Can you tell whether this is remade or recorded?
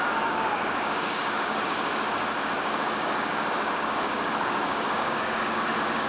remade